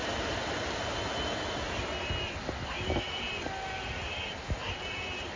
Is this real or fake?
real